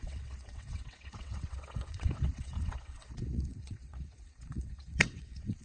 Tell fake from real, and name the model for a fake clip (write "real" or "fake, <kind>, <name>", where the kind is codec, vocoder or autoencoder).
fake, vocoder, WaveNeXt